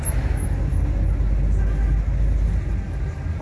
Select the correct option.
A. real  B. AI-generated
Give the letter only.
A